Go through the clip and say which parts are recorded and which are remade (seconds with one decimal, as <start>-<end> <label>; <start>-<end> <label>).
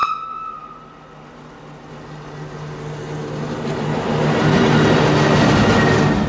0.0-6.3 recorded